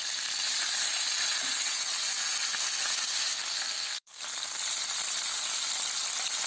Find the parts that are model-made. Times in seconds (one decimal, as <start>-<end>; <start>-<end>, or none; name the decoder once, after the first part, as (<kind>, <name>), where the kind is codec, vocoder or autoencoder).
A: 3.5-4.2 (codec, SNAC)